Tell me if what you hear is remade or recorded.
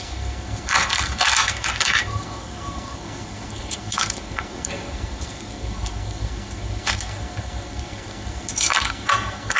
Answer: remade